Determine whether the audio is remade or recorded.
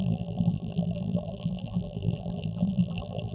remade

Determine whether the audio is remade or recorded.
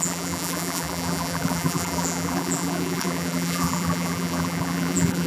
remade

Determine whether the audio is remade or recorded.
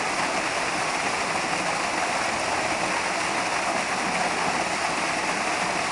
recorded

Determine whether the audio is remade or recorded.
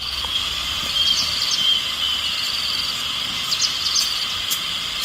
recorded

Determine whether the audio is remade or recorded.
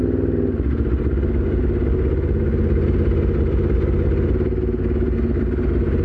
recorded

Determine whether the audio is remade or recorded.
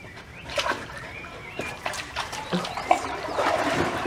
remade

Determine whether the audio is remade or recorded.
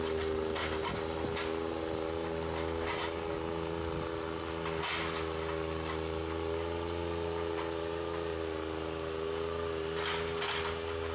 recorded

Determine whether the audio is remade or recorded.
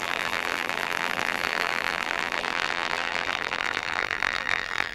remade